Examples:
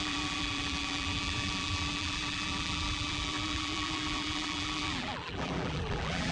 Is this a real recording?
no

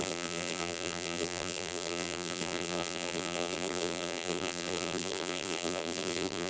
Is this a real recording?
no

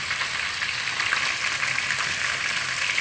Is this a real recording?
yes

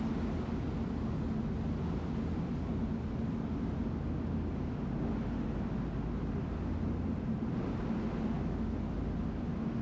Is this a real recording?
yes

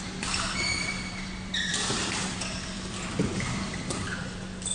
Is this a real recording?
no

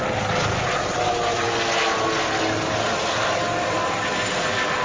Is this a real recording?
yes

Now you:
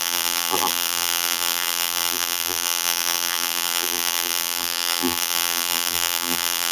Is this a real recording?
no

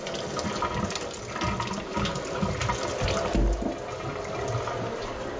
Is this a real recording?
yes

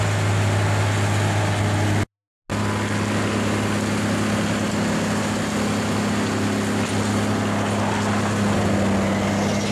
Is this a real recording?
yes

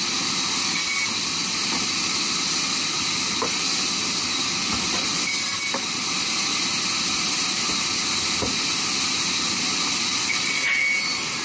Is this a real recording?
yes